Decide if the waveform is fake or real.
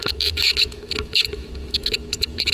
fake